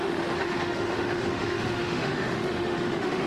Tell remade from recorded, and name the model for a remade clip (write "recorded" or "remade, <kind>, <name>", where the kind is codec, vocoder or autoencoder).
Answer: remade, autoencoder, DAC-VAE